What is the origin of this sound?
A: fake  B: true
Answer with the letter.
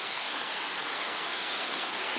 A